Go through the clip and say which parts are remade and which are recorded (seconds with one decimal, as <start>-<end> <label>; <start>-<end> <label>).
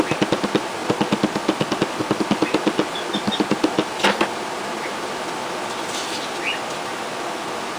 0.0-7.8 recorded